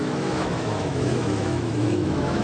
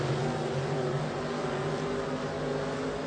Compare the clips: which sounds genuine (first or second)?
second